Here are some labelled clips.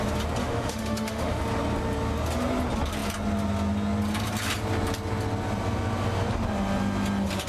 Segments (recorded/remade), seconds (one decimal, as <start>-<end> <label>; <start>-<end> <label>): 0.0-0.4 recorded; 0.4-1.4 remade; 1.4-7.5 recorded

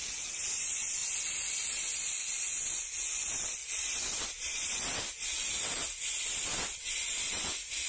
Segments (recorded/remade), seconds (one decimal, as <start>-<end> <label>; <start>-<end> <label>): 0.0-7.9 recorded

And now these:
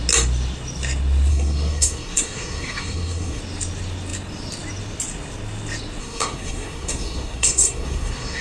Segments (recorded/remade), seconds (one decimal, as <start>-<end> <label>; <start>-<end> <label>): 0.0-1.3 recorded; 1.3-3.4 remade; 3.4-6.0 recorded; 6.0-8.4 remade

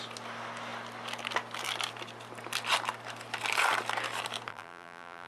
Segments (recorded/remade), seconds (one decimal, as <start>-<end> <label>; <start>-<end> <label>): 0.0-4.5 recorded; 4.5-5.3 remade

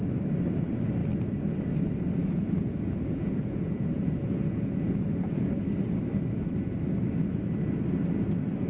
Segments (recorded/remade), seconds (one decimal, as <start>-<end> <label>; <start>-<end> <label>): 0.0-2.2 recorded; 2.2-5.5 remade; 5.5-8.7 recorded

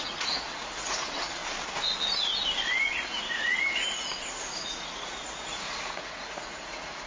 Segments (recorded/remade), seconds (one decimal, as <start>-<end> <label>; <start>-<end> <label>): 0.0-1.4 remade; 1.4-2.8 recorded; 2.8-7.1 remade